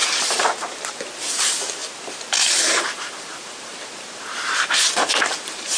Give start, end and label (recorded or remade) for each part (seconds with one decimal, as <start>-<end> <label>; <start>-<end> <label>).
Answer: 0.0-1.8 remade; 1.8-2.8 recorded; 2.8-5.8 remade